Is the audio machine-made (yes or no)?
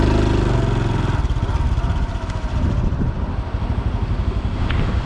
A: no